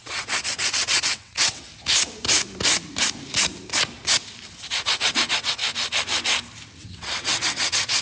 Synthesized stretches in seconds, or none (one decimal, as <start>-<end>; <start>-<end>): 0.0-1.7; 4.7-5.6; 6.8-8.0